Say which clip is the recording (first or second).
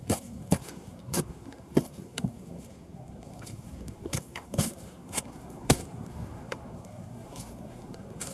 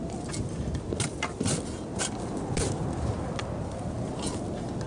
second